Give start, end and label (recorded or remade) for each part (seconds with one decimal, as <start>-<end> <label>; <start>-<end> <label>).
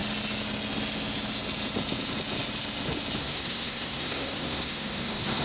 0.0-3.2 recorded; 3.2-5.4 remade